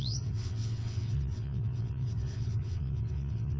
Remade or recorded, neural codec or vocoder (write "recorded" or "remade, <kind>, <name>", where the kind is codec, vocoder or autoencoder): remade, vocoder, WaveNeXt